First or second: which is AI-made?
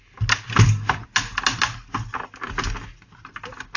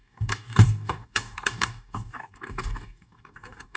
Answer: second